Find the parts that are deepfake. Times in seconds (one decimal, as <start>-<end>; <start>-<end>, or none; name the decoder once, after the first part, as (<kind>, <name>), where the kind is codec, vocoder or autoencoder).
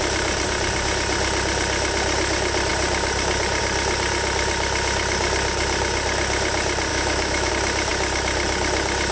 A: 6.9-7.5 (autoencoder, DAC-VAE)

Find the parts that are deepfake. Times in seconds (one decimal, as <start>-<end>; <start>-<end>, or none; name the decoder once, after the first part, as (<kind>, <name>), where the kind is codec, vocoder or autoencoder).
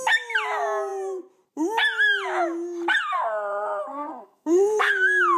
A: 3.9-4.9 (codec, SNAC)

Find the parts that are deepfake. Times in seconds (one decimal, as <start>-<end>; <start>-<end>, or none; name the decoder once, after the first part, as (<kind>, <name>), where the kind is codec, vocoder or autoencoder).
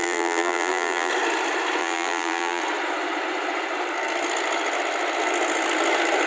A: 0.0-1.1 (vocoder, BigVGAN v2); 1.8-2.6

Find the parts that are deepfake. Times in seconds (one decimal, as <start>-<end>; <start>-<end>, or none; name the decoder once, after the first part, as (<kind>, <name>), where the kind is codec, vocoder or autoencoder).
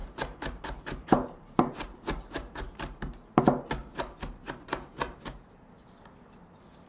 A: 0.0-3.4 (vocoder, BigVGAN v2); 3.8-5.5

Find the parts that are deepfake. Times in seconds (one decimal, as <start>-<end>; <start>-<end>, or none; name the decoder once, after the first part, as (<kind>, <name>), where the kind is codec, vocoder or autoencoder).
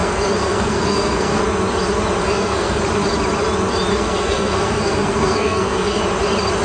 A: 0.0-1.4 (codec, SNAC); 2.2-2.8; 3.9-6.0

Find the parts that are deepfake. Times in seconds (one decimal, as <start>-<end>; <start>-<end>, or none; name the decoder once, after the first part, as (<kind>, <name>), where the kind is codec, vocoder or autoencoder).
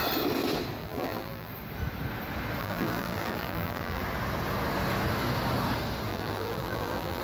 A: 0.8-1.5 (vocoder, BigVGAN v2); 2.6-4.0; 6.1-7.2